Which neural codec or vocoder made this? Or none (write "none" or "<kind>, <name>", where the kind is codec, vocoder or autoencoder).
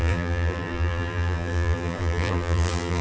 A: vocoder, BigVGAN v2